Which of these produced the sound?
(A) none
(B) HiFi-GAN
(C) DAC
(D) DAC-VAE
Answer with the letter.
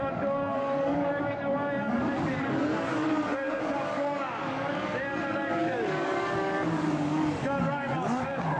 C